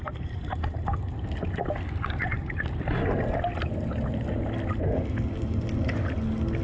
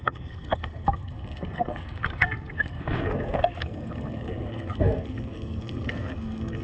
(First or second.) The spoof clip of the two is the second